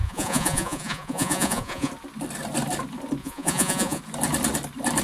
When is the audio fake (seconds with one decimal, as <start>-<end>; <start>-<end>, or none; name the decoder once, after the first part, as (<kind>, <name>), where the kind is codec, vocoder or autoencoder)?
0.0-1.9 (vocoder, Vocos); 3.2-4.0